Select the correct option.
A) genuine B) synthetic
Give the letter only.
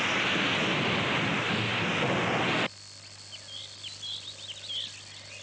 A